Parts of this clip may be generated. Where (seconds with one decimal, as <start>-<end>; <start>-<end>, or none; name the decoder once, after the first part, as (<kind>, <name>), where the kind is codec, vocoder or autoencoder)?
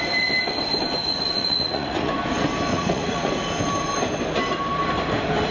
1.0-2.1 (vocoder, Vocos); 2.7-3.3